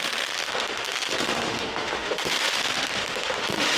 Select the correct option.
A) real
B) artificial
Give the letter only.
B